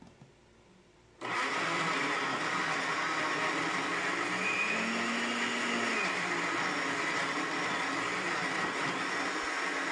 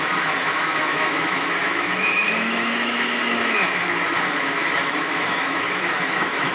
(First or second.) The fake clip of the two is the second